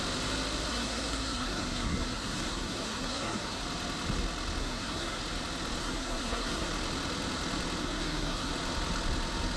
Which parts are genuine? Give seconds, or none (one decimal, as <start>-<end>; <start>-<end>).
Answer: 0.0-0.7; 3.6-4.6; 5.2-5.8; 6.7-7.8; 8.5-9.6